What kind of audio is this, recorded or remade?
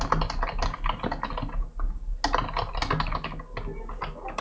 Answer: recorded